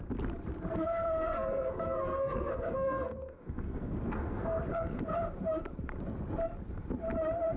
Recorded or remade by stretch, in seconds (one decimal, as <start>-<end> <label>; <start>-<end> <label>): 0.0-0.7 recorded; 0.7-5.0 remade; 5.0-7.6 recorded